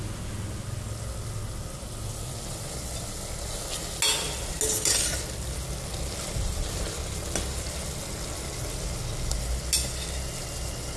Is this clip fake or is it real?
real